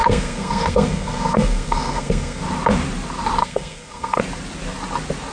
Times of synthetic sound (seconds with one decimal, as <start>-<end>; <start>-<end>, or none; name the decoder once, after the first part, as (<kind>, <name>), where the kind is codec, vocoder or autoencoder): 0.0-2.4 (codec, SNAC); 3.4-4.2